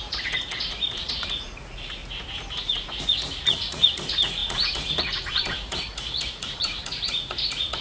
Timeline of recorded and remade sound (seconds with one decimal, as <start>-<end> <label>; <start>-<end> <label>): 0.0-2.0 remade; 2.0-2.5 recorded; 2.5-7.8 remade